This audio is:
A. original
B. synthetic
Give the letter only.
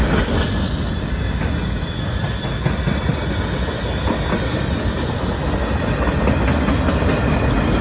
A